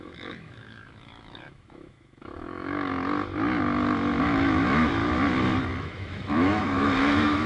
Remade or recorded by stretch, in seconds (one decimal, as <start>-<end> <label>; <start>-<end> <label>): 0.0-2.9 remade; 2.9-4.2 recorded; 4.2-5.0 remade; 5.0-5.8 recorded; 5.8-7.5 remade